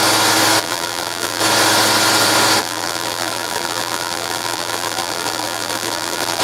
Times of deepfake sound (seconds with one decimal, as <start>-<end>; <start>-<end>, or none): 0.6-1.4; 2.6-6.4